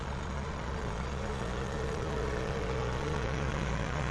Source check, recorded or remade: remade